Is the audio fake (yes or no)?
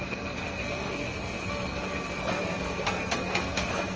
yes